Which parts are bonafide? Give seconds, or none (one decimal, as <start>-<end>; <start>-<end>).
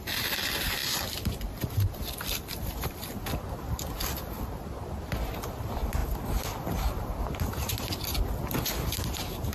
0.0-0.8; 3.0-9.5